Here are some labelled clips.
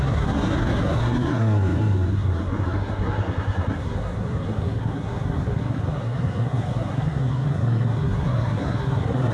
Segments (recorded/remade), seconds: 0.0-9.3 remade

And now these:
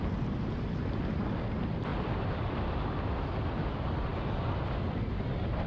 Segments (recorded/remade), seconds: 0.0-5.7 recorded

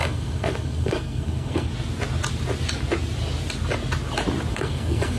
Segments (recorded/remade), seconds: 0.0-1.7 remade; 1.7-4.5 recorded; 4.5-5.2 remade

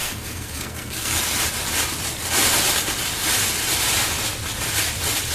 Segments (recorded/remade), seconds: 0.0-1.2 remade; 1.2-5.3 recorded

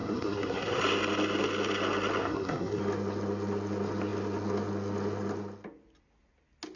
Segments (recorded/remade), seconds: 0.0-0.8 remade; 0.8-2.2 recorded; 2.2-2.8 remade; 2.8-6.8 recorded